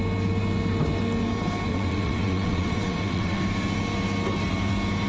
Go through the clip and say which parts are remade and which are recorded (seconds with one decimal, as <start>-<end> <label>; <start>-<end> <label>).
0.0-1.7 recorded; 1.7-3.4 remade; 3.4-5.1 recorded

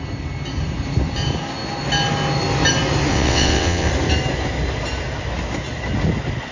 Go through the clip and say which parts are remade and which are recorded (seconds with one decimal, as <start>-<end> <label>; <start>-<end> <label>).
0.0-3.1 recorded; 3.1-3.9 remade; 3.9-6.5 recorded

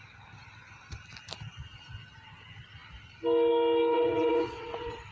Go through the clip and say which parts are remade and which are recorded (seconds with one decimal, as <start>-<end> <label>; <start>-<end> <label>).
0.0-3.9 recorded; 3.9-5.1 remade

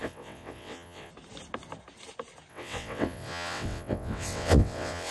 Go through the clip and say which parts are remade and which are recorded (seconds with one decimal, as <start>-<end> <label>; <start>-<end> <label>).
0.0-1.1 remade; 1.1-2.5 recorded; 2.5-5.1 remade

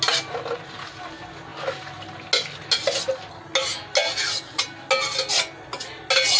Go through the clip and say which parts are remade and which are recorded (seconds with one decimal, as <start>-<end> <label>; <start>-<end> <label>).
0.0-6.4 recorded

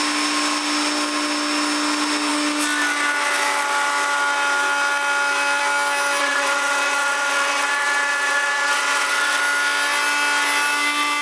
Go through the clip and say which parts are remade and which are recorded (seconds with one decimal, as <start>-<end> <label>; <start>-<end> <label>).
0.0-6.2 recorded; 6.2-9.4 remade; 9.4-11.2 recorded

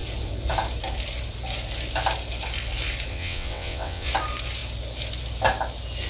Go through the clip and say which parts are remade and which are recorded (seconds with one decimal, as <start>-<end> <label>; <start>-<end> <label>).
0.0-3.1 recorded; 3.1-4.1 remade; 4.1-6.1 recorded

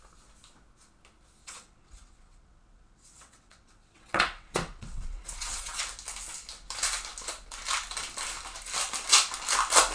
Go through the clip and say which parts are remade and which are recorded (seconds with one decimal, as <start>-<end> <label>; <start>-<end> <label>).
0.0-1.4 recorded; 1.4-5.8 remade; 5.8-9.9 recorded